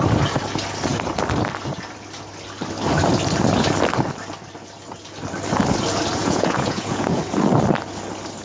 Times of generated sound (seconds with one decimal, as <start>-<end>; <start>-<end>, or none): 6.2-7.2